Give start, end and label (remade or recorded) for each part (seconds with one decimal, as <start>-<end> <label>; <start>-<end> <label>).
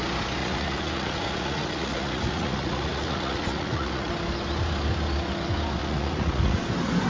0.0-0.4 recorded; 0.4-4.1 remade; 4.1-5.8 recorded; 5.8-6.6 remade; 6.6-7.1 recorded